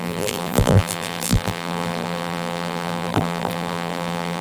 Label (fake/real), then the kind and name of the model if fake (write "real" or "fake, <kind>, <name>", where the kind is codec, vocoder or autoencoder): fake, vocoder, BigVGAN v2